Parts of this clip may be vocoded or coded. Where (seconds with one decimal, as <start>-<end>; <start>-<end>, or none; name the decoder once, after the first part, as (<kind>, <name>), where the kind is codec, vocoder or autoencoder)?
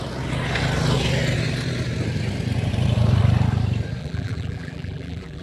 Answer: 4.0-5.4 (vocoder, BigVGAN v2)